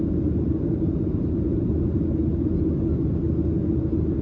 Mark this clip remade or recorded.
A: recorded